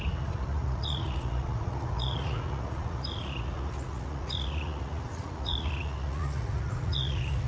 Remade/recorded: remade